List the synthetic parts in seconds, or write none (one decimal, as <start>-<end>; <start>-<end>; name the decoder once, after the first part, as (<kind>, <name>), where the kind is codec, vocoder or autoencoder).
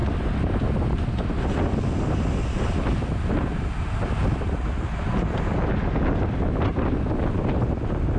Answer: none